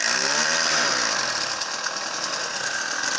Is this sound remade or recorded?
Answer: recorded